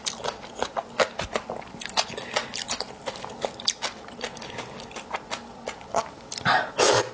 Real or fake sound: real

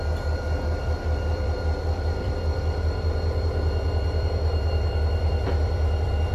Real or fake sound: fake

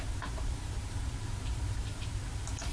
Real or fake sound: fake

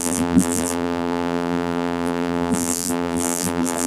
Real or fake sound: fake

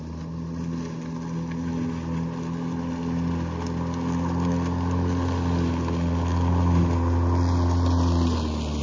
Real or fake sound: real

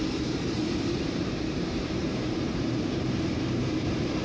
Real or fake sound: fake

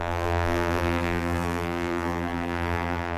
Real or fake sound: fake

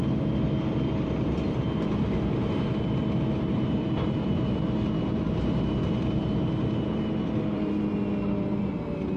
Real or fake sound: fake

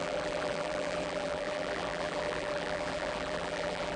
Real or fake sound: fake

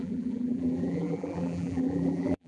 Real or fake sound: fake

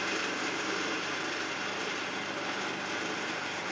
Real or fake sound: fake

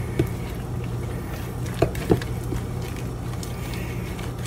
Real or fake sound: real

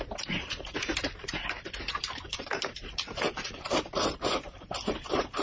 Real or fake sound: fake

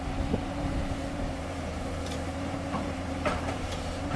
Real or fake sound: fake